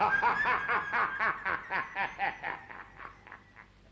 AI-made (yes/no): no